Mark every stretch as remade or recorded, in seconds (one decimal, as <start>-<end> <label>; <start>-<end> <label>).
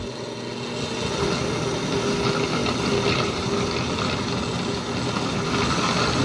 0.0-6.2 recorded